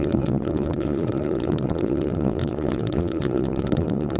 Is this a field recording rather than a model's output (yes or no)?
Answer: no